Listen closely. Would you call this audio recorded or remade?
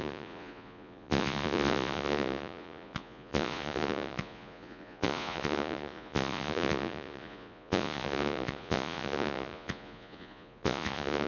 remade